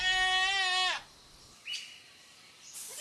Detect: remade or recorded recorded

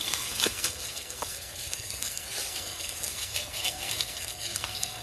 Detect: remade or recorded remade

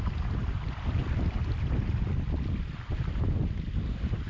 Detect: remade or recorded recorded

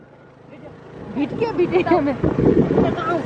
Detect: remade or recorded recorded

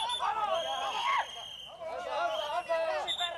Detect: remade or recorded recorded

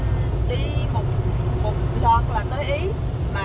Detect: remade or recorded recorded